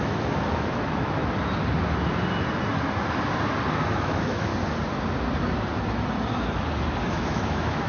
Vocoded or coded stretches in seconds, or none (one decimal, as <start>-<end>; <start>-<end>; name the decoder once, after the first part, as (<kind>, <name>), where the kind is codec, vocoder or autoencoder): 0.0-1.2 (autoencoder, DAC-VAE); 3.7-4.5; 7.1-7.9